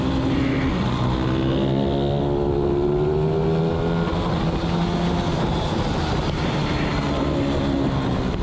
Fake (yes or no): no